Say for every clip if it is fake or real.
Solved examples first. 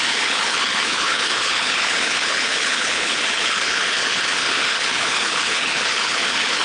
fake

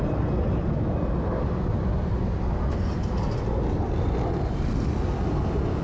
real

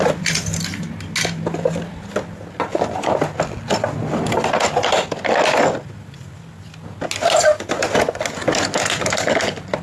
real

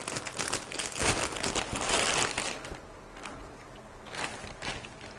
real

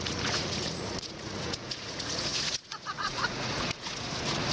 fake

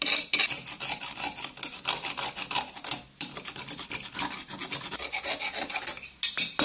real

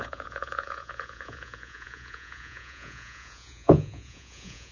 fake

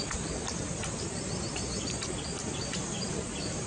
real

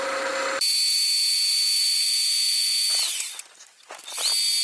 real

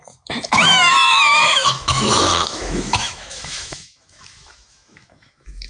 fake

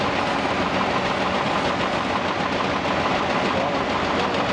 real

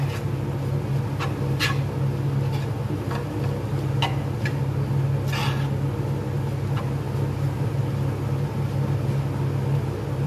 real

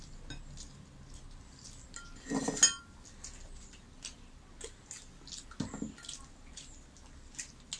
real